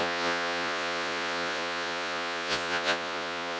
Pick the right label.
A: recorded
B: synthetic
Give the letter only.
B